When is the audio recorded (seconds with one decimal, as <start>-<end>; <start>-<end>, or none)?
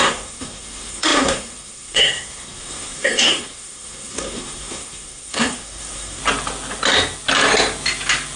6.2-8.4